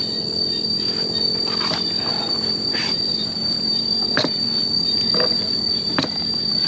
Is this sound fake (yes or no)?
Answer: yes